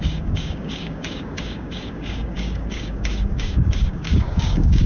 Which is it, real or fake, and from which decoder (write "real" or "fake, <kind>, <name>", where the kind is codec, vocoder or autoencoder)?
fake, codec, DAC